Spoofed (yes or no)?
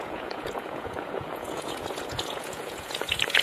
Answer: yes